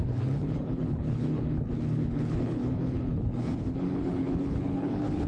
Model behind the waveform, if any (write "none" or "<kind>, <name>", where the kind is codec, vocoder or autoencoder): codec, HILCodec